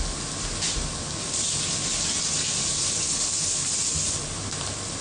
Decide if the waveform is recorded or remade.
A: recorded